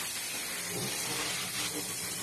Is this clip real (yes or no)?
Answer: yes